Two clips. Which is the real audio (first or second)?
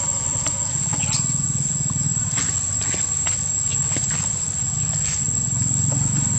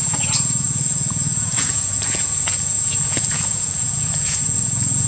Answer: first